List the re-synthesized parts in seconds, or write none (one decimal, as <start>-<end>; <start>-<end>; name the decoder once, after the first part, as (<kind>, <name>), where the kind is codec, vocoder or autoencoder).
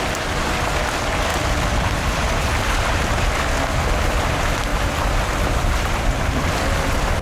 none